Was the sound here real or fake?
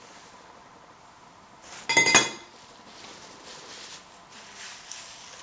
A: real